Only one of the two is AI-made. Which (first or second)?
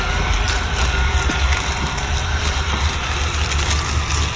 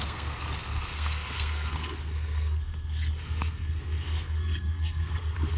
second